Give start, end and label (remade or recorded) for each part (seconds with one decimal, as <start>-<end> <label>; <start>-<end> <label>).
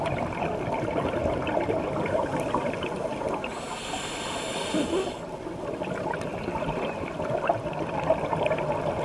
0.0-9.0 recorded